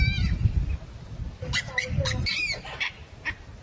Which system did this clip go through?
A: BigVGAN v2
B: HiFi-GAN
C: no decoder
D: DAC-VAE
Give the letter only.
C